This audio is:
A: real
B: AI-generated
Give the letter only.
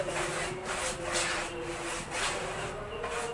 A